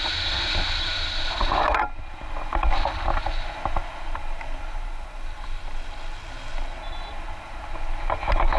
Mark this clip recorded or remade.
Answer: recorded